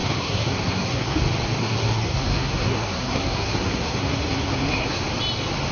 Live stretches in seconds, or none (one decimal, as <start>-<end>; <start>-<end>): 1.2-1.6; 5.0-5.7